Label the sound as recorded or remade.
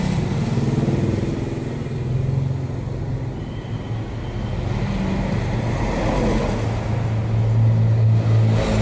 recorded